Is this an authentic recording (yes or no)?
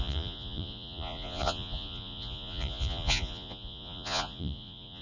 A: no